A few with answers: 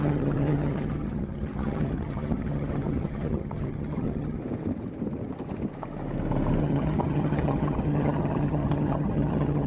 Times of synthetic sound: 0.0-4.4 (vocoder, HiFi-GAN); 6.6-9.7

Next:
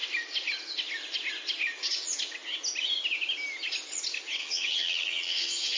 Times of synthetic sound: 4.4-5.8 (vocoder, HiFi-GAN)

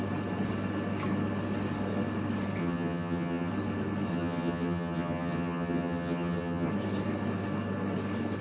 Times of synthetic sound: 2.6-3.5 (vocoder, HiFi-GAN); 4.1-6.7